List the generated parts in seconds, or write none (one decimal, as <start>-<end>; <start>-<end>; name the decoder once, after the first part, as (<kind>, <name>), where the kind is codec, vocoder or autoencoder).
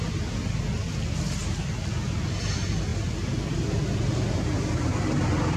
none